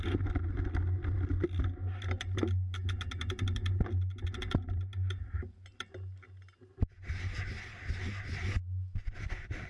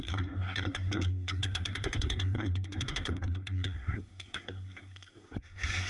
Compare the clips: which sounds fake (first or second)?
second